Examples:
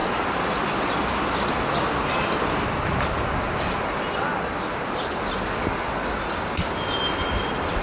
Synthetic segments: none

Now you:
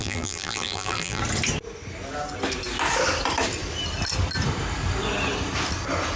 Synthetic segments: 0.0-1.2